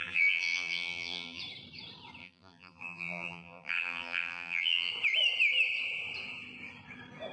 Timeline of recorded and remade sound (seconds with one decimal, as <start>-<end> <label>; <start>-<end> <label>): 0.0-1.4 remade; 1.4-2.2 recorded; 2.2-4.9 remade; 4.9-7.3 recorded